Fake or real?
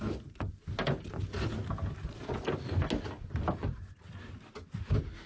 real